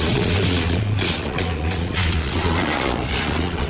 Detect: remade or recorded remade